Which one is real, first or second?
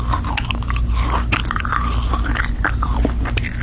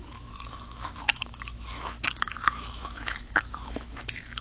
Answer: first